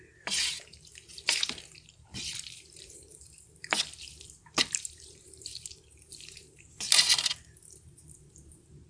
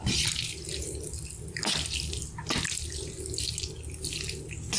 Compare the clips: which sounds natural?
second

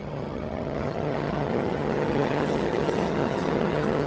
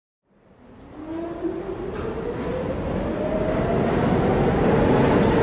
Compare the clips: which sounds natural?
second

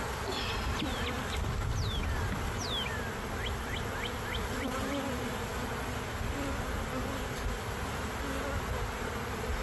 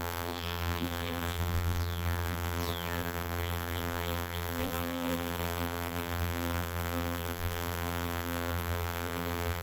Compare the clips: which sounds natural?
first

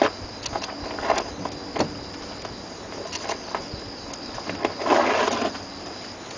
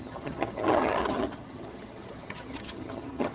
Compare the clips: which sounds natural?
first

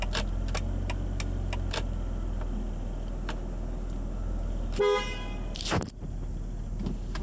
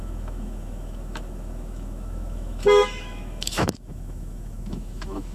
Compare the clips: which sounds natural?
first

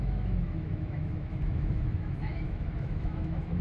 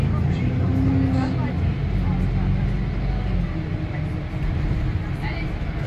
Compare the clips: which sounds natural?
second